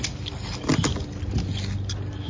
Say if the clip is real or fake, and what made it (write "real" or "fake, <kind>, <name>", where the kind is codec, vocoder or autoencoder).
real